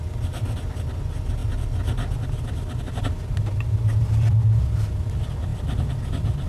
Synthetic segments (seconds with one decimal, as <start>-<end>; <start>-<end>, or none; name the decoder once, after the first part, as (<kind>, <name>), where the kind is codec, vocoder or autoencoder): none

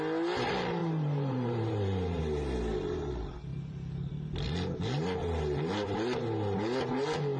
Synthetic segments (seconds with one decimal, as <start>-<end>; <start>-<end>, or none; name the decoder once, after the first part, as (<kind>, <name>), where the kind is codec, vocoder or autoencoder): 0.8-2.2 (vocoder, BigVGAN v2); 3.5-4.1